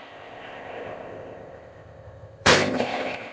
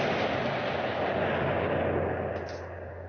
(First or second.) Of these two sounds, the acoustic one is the second